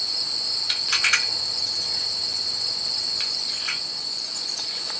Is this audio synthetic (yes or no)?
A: yes